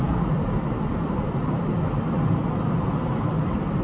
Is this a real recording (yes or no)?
yes